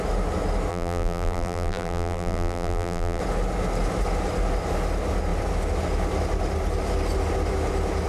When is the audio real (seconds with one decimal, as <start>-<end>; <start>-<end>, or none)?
0.0-0.7; 3.2-8.1